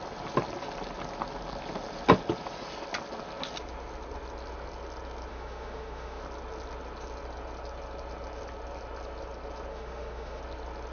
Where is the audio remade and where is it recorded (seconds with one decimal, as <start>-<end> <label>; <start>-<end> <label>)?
0.0-5.3 recorded; 5.3-6.2 remade; 6.2-9.7 recorded; 9.7-10.4 remade; 10.4-10.9 recorded